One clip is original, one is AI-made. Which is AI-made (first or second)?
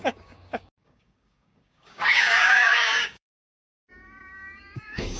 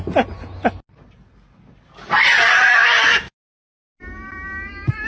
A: first